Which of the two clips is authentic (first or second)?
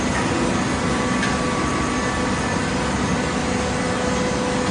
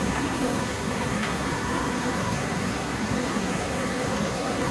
first